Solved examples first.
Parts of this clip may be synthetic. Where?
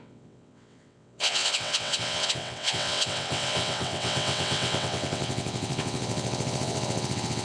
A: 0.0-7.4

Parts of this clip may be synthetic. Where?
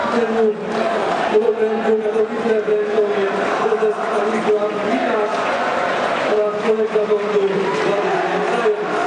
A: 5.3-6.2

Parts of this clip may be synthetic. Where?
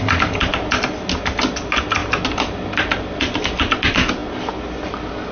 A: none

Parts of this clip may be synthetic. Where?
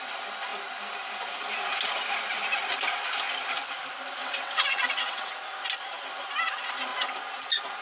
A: 4.2-5.3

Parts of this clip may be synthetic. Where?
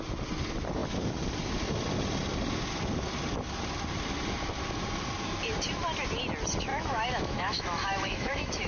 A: 6.7-8.7